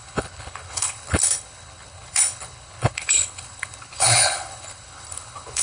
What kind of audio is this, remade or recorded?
remade